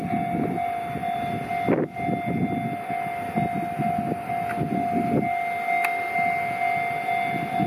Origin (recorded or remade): recorded